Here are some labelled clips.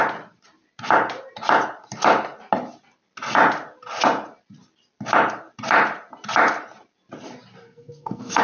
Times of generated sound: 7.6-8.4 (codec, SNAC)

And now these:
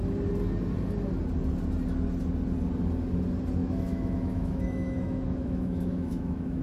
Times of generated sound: 3.6-6.6 (autoencoder, DAC-VAE)

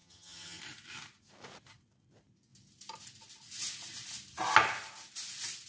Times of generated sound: 0.0-0.6 (vocoder, HiFi-GAN)